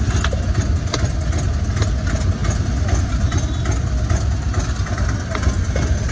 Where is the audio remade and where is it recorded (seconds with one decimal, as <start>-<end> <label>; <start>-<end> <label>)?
0.0-6.1 recorded